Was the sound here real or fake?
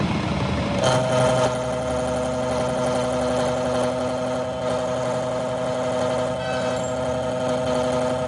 real